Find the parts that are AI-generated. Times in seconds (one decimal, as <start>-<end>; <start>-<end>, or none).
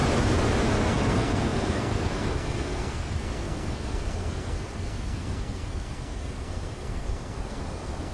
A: 0.6-8.1